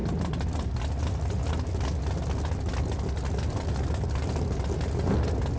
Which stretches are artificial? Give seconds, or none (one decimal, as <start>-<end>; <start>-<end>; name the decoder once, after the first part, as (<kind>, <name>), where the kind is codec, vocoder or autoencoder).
none